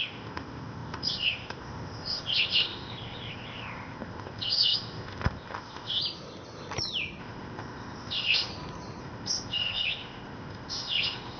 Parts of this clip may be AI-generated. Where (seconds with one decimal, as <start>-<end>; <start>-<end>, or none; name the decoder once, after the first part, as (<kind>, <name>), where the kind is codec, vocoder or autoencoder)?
0.0-6.0 (codec, ZipCodec); 7.2-8.5; 9.0-11.4